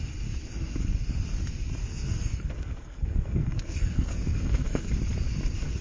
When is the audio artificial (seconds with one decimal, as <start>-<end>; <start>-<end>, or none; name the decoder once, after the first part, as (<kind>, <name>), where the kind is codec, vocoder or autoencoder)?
1.8-4.9 (codec, SNAC)